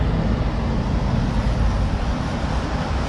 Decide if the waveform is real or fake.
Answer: real